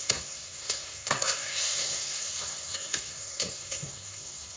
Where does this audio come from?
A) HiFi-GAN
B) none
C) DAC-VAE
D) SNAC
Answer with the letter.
D